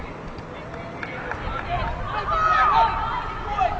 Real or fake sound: real